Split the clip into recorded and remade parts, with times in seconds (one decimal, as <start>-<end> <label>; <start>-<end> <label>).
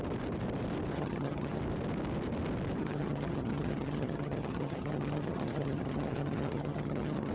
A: 0.0-0.9 recorded; 0.9-1.6 remade; 1.6-2.8 recorded; 2.8-7.3 remade